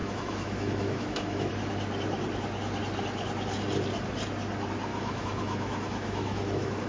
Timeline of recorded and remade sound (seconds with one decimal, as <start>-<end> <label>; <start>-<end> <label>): 0.0-1.5 remade; 1.5-4.9 recorded; 4.9-6.9 remade